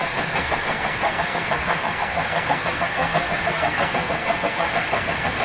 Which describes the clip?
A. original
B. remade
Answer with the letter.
B